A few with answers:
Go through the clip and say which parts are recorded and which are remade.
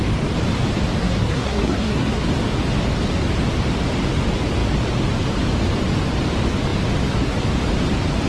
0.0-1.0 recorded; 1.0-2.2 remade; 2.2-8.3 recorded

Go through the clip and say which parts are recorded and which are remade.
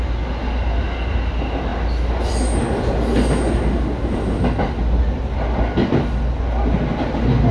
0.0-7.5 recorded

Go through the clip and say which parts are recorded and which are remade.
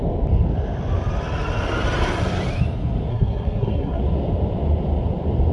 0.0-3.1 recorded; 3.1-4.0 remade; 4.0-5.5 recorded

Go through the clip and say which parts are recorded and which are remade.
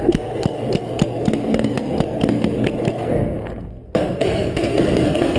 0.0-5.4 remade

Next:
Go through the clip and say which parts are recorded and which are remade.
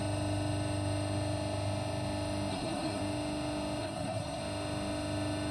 0.0-2.5 recorded; 2.5-3.0 remade; 3.0-3.8 recorded; 3.8-4.4 remade; 4.4-5.5 recorded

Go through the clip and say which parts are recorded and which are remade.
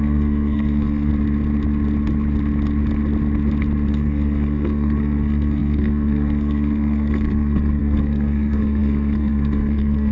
0.0-1.1 remade; 1.1-3.9 recorded; 3.9-10.1 remade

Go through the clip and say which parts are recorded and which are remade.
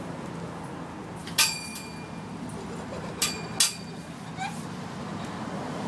0.0-5.9 recorded